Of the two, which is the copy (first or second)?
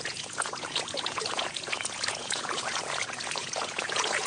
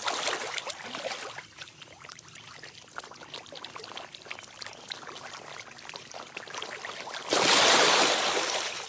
first